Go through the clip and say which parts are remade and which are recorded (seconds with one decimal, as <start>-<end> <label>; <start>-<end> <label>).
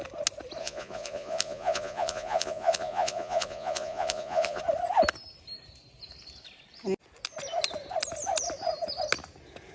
0.0-0.6 recorded; 0.6-4.6 remade; 4.6-9.7 recorded